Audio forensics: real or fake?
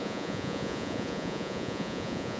fake